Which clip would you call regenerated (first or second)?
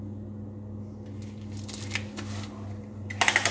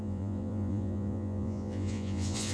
second